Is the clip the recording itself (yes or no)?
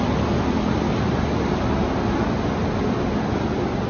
yes